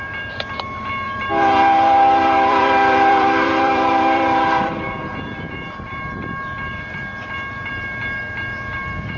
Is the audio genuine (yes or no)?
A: no